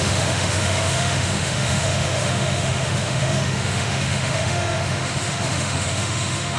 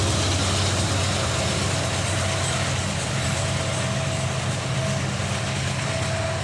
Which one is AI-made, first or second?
first